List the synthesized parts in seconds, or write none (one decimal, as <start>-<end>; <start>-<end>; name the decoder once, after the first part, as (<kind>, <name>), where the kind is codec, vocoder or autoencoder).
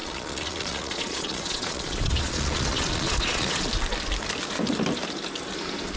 0.0-3.6 (vocoder, Vocos)